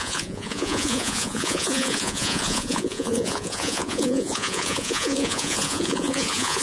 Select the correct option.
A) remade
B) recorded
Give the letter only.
A